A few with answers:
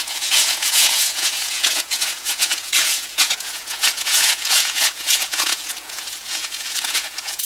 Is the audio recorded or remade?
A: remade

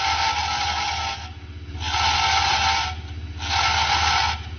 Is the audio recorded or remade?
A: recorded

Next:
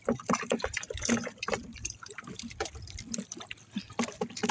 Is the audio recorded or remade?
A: remade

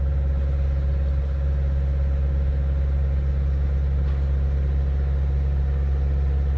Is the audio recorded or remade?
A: recorded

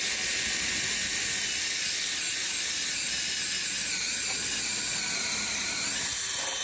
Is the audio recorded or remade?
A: recorded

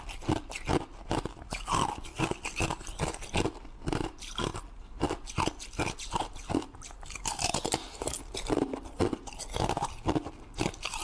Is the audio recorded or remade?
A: recorded